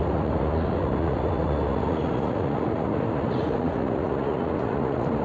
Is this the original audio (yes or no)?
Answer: no